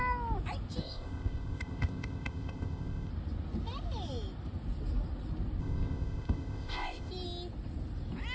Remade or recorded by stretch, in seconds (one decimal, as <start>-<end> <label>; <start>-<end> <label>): 0.0-0.8 recorded; 0.8-3.1 remade; 3.1-5.6 recorded; 5.6-7.1 remade; 7.1-8.3 recorded